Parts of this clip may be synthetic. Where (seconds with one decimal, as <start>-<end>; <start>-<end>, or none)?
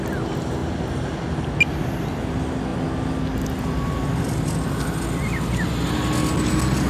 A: none